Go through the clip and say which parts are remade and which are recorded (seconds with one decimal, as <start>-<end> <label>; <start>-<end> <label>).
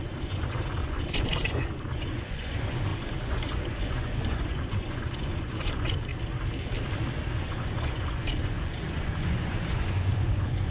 0.0-6.1 remade; 6.1-7.3 recorded; 7.3-10.7 remade